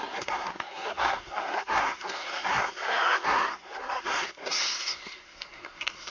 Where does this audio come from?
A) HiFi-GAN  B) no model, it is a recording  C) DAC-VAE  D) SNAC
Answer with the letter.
D